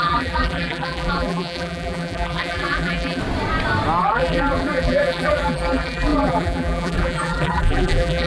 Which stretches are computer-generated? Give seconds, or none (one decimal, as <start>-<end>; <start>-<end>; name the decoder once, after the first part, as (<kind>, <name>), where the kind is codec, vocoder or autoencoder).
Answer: 0.0-3.2 (vocoder, BigVGAN v2); 4.0-8.3